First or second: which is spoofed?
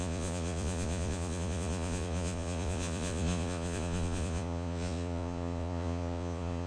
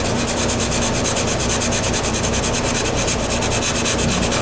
first